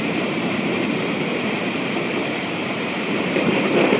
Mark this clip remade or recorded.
remade